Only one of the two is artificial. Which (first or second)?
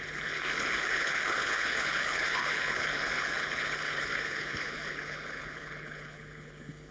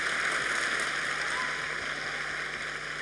first